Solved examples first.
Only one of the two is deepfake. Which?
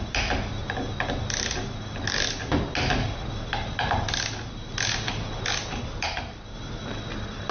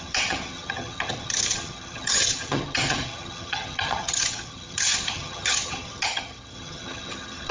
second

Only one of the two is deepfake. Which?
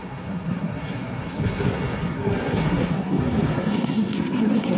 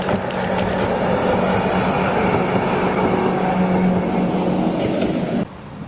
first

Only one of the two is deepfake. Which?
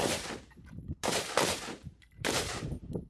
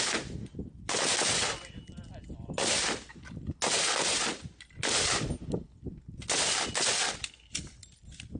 first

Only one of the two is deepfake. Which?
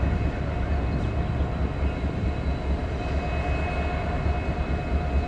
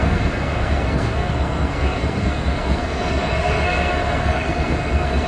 second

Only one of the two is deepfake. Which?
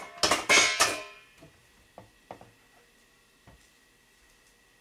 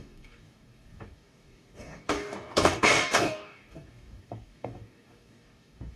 second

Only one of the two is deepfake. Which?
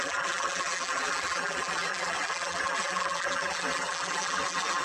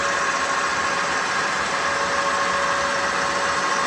first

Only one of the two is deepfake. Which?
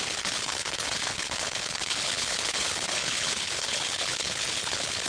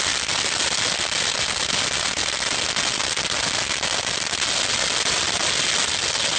first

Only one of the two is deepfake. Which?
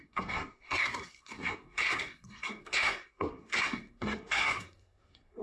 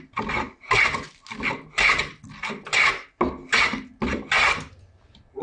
first